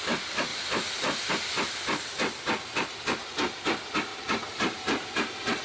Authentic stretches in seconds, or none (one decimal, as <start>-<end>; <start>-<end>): 0.0-4.1